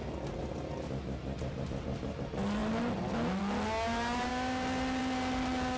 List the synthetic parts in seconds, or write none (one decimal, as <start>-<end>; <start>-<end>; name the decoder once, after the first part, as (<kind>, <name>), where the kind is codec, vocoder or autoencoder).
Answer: none